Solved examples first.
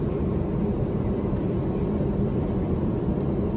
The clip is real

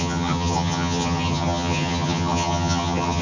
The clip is fake